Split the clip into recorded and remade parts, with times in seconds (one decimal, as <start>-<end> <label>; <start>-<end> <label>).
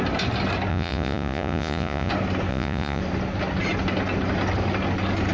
0.0-0.7 recorded; 0.7-2.1 remade; 2.1-2.5 recorded; 2.5-3.0 remade; 3.0-5.3 recorded